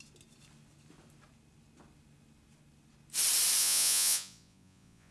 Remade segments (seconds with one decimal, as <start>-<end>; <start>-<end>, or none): 3.6-5.1